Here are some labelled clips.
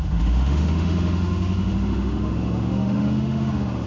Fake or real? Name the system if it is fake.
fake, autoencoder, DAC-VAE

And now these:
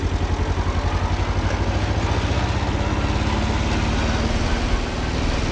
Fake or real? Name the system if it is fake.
real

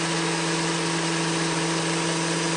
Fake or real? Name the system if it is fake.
real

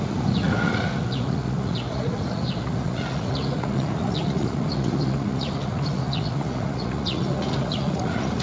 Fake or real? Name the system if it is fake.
fake, vocoder, Vocos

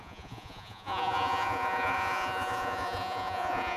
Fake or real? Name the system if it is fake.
fake, vocoder, Vocos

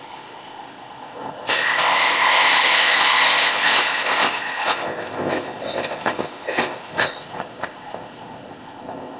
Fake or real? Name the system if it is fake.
fake, codec, ZipCodec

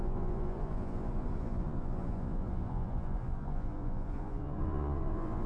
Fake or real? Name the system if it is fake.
fake, vocoder, Vocos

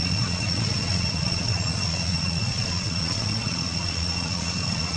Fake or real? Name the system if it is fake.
fake, vocoder, Vocos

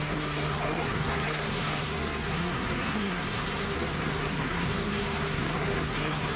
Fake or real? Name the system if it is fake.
fake, codec, SNAC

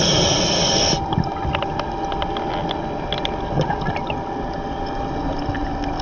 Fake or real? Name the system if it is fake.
real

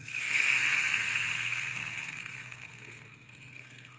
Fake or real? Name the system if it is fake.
fake, codec, SNAC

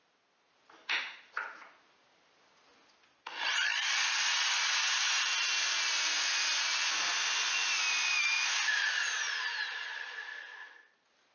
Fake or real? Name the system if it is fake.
real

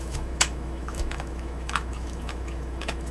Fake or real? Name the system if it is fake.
fake, autoencoder, DAC-VAE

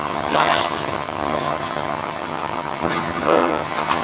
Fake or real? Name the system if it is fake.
fake, vocoder, HiFi-GAN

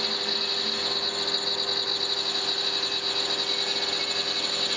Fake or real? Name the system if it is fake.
real